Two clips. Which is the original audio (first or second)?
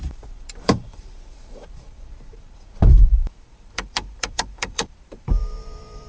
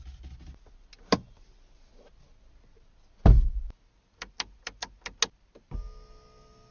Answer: second